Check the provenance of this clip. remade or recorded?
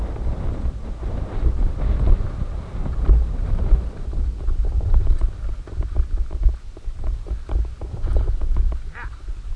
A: recorded